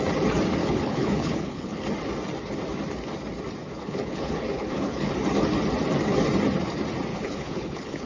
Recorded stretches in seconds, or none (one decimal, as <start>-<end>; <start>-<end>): 0.0-0.6; 1.8-3.6; 5.1-7.1